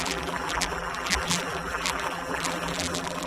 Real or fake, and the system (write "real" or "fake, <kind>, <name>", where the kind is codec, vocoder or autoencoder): fake, vocoder, BigVGAN v2